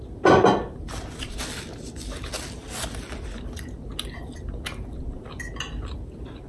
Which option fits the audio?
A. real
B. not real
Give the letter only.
A